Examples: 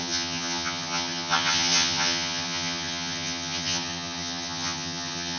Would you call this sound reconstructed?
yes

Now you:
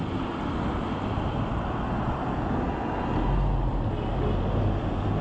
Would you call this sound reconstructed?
no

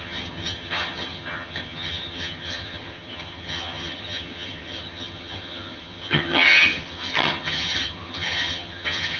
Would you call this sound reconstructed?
yes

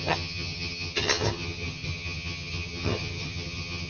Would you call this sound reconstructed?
yes